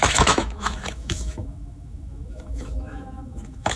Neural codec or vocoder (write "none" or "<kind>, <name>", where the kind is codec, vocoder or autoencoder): autoencoder, DAC-VAE